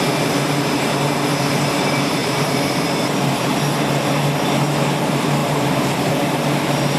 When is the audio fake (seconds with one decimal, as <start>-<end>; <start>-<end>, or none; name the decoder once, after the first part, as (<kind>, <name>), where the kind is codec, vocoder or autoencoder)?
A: 2.2-2.8 (vocoder, BigVGAN v2); 5.4-6.1